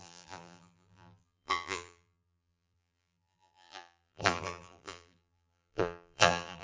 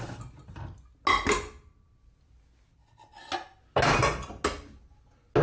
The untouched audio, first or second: second